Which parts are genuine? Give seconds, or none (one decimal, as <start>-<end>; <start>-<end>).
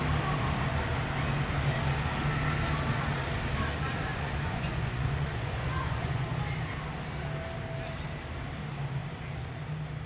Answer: 0.0-4.1; 6.3-10.1